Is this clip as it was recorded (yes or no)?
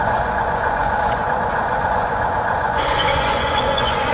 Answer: no